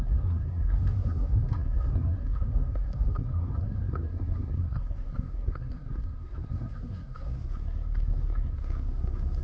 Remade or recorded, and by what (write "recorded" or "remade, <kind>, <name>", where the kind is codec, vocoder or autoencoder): remade, codec, SNAC